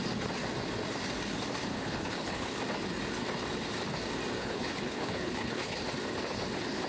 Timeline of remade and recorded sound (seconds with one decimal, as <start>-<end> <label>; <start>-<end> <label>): 0.0-1.7 recorded; 1.7-2.5 remade; 2.5-4.4 recorded; 4.4-5.8 remade; 5.8-6.9 recorded